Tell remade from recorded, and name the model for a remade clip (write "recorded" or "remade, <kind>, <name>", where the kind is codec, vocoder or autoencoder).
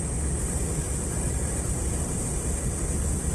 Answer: recorded